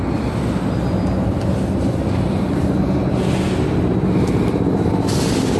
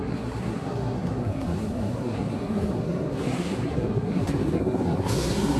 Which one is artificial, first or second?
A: second